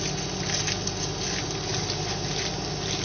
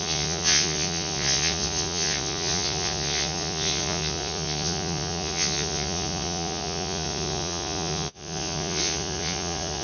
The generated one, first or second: second